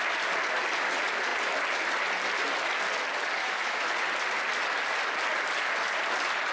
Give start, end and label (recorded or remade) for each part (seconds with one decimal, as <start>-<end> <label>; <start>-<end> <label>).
0.0-3.4 recorded; 3.4-3.9 remade; 3.9-6.5 recorded